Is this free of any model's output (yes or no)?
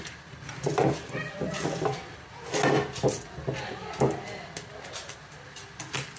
yes